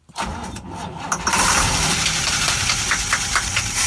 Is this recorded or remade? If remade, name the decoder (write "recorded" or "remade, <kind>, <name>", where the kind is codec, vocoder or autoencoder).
remade, vocoder, BigVGAN v2